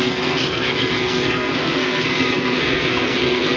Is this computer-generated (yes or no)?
yes